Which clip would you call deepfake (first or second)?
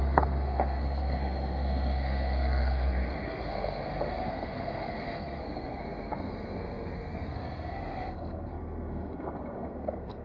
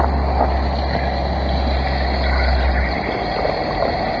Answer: first